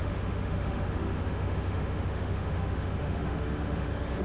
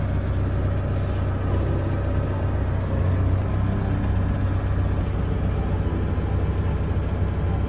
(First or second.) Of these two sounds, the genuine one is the second